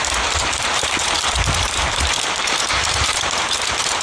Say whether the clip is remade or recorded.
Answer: remade